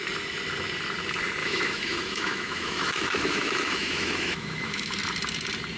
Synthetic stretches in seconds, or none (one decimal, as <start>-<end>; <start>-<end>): 1.4-4.9